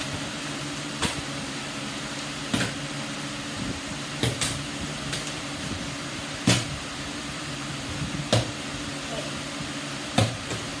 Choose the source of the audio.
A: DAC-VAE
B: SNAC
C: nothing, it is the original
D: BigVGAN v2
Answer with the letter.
D